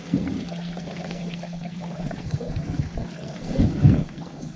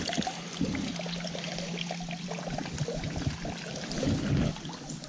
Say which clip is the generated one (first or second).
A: first